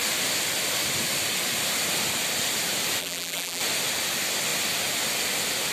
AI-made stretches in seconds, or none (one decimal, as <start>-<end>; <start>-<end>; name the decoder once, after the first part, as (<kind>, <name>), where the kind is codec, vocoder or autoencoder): 3.0-3.6 (vocoder, BigVGAN v2)